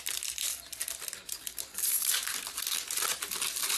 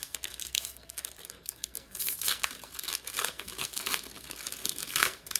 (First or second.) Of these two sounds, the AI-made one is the second